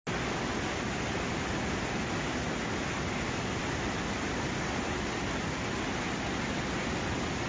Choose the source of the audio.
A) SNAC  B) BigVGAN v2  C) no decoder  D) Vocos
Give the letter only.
C